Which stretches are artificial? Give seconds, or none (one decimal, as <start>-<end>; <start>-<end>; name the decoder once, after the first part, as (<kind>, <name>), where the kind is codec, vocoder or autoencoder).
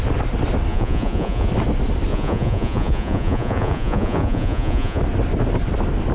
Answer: 0.7-1.5 (vocoder, Vocos); 2.1-5.0